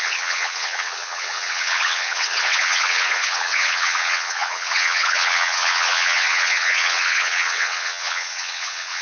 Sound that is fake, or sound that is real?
fake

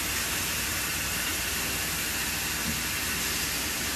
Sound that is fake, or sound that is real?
real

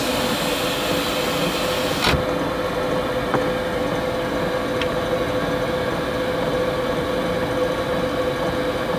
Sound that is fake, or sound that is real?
real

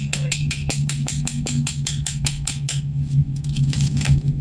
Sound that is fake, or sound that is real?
fake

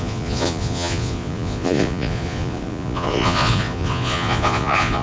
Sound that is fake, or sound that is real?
fake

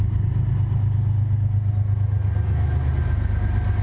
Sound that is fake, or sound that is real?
real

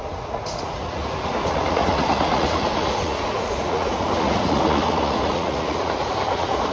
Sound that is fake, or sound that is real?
fake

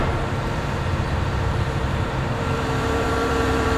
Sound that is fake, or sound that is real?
fake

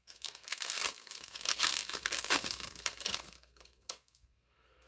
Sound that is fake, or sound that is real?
fake